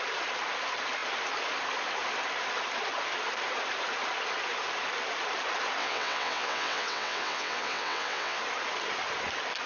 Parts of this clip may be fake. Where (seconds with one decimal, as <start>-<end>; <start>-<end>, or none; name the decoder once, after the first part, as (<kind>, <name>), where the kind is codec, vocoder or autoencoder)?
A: 5.8-8.4 (vocoder, WaveNeXt)